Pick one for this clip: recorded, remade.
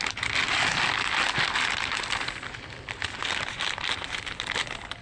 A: recorded